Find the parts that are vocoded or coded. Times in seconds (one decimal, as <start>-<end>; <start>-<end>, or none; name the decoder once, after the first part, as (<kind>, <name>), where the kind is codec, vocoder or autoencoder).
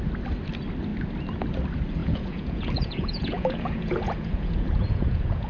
2.0-5.5 (vocoder, Vocos)